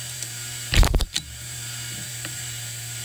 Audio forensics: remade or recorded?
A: remade